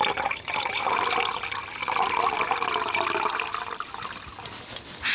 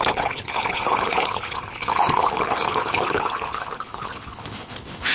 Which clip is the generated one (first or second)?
second